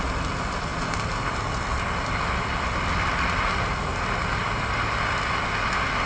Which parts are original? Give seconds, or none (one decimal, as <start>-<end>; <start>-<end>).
0.0-6.1